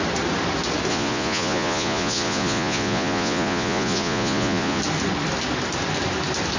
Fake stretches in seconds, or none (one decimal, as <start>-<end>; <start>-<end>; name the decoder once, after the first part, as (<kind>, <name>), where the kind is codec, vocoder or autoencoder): 0.9-4.8 (vocoder, Vocos)